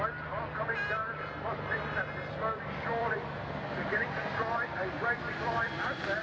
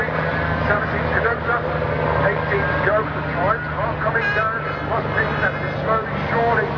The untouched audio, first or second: second